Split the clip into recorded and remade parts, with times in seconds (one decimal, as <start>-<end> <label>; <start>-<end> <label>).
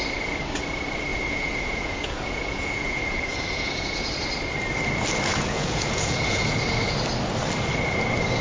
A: 0.0-1.1 recorded; 1.1-4.1 remade; 4.1-5.3 recorded; 5.3-6.6 remade; 6.6-8.4 recorded